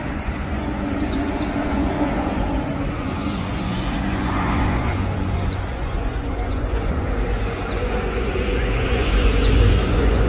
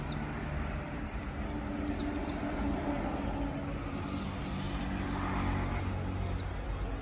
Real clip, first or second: second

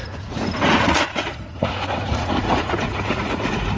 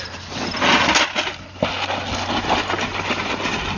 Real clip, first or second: second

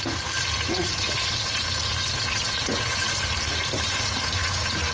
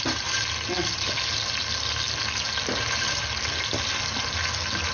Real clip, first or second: second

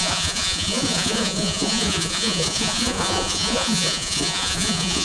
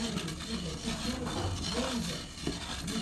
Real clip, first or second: second